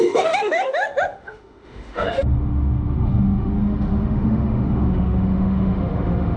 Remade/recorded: remade